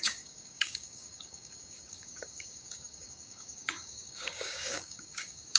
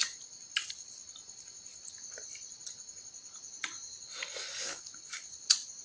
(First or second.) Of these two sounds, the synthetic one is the first